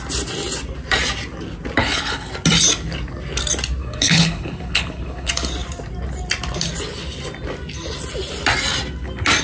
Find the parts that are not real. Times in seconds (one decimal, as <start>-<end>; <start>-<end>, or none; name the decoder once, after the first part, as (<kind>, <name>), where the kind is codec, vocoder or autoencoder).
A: 1.8-2.3 (codec, HILCodec); 3.8-5.3